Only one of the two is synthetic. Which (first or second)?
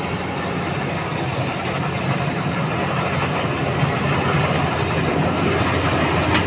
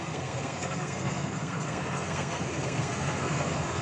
second